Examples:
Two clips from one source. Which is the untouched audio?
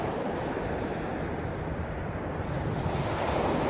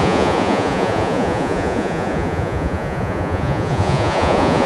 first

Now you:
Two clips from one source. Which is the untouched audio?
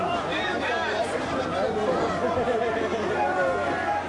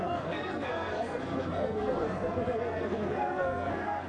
first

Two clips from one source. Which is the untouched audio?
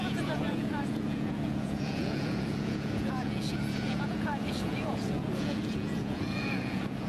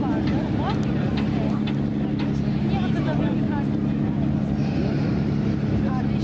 second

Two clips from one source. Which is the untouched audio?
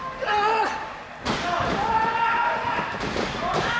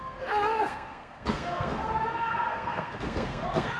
first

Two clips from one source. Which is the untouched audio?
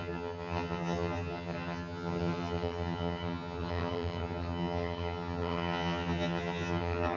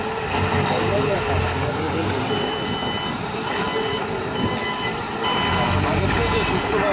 second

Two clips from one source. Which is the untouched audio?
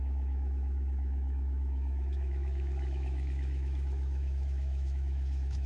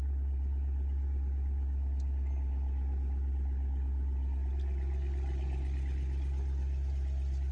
second